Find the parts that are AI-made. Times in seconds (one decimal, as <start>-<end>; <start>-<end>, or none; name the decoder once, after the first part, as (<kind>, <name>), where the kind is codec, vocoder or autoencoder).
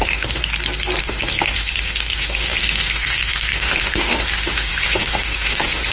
0.0-0.4 (autoencoder, DAC-VAE); 1.0-5.9